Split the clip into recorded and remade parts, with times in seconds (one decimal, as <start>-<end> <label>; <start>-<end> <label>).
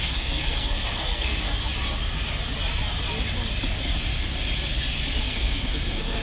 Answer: 0.0-1.5 remade; 1.5-5.2 recorded; 5.2-6.2 remade